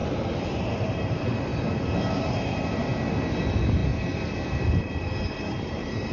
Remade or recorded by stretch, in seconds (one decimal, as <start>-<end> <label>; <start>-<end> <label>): 0.0-1.5 remade; 1.5-2.2 recorded; 2.2-2.9 remade; 2.9-3.4 recorded; 3.4-3.8 remade; 3.8-5.4 recorded; 5.4-6.1 remade